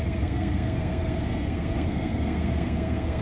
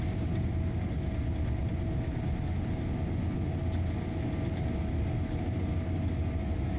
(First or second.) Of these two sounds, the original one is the second